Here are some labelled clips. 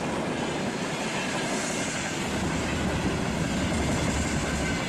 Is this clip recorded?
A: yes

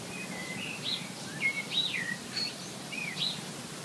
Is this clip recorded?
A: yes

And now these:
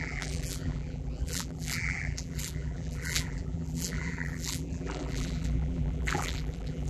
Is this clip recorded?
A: no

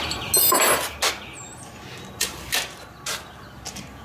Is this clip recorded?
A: yes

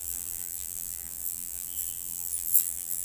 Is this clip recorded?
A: no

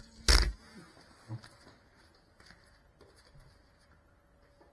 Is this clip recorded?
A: yes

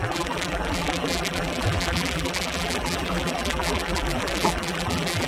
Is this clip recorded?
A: no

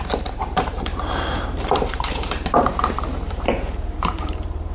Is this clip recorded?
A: no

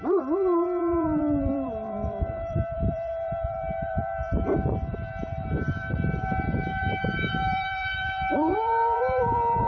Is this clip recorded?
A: no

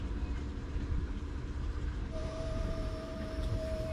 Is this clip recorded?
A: no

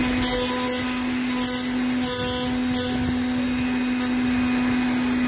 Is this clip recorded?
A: yes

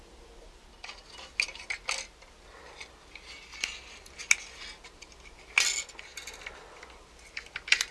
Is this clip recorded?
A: yes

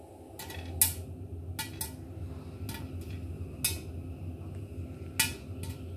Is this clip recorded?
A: yes